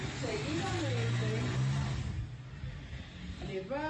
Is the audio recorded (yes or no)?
yes